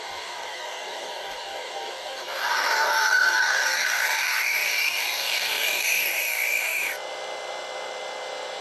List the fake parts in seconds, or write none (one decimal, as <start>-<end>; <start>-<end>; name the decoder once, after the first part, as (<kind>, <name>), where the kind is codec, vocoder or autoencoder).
0.0-6.9 (codec, DAC)